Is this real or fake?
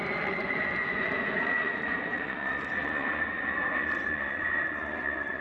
fake